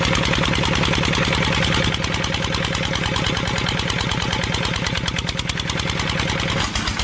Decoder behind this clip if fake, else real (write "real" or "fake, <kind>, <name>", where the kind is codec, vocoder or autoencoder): real